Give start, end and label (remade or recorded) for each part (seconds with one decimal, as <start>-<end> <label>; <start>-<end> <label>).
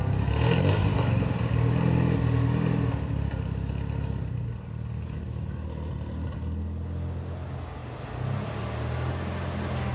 0.0-9.9 recorded